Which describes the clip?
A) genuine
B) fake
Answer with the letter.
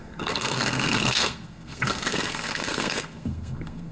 B